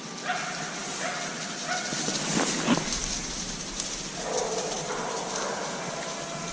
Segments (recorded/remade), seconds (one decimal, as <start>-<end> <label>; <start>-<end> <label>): 0.0-6.5 recorded